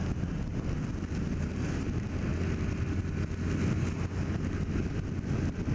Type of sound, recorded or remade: recorded